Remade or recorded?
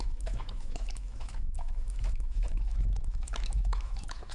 remade